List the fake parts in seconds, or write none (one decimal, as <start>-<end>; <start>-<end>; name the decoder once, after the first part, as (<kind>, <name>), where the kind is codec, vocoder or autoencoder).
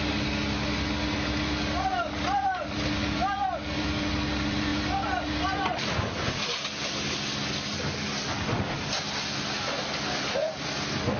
none